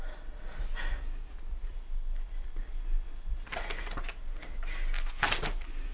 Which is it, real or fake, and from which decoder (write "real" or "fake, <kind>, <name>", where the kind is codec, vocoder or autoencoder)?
real